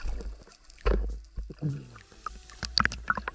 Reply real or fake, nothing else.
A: real